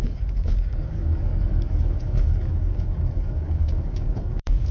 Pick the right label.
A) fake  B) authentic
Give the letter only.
A